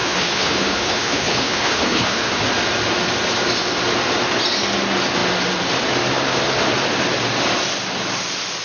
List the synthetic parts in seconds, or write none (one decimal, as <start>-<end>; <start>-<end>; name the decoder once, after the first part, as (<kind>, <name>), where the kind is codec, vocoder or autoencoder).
0.0-2.3 (codec, HILCodec)